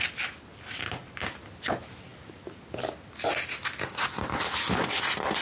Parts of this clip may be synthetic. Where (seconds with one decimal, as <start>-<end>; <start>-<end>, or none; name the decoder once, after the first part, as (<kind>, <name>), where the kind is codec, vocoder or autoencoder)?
none